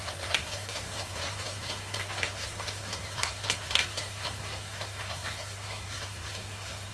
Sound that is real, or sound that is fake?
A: fake